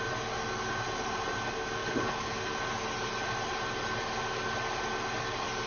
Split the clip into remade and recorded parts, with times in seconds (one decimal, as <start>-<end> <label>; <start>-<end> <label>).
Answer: 0.0-1.8 recorded; 1.8-2.5 remade; 2.5-5.7 recorded